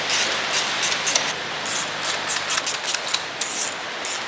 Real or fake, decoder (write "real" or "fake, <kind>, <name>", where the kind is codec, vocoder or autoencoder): real